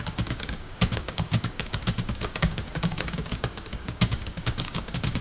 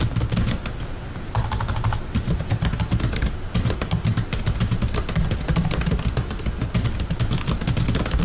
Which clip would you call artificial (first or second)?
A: first